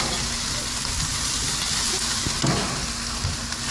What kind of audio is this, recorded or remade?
recorded